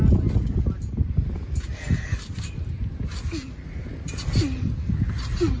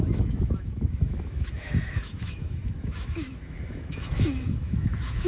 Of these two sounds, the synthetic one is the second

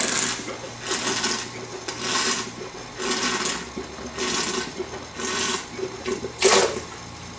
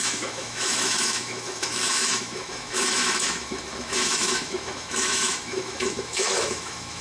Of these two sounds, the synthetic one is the second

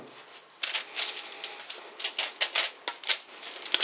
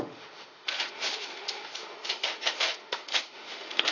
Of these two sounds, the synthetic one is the second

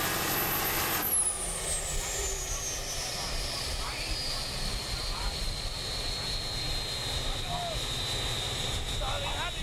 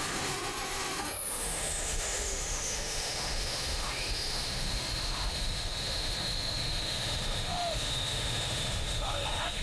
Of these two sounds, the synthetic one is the second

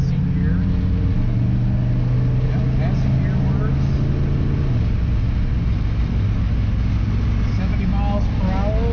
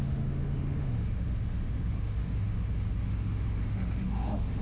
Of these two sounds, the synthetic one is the second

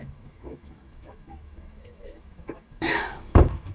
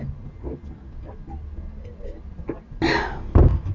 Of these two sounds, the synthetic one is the first